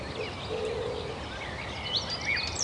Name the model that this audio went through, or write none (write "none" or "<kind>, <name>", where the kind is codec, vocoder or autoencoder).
none